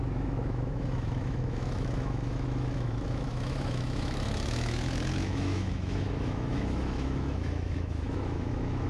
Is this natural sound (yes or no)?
no